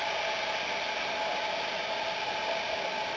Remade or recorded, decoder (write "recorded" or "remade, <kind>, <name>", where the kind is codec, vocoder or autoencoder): recorded